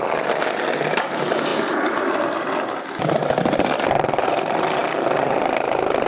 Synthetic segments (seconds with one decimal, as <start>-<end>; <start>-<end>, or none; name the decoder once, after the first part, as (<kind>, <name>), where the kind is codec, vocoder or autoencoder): none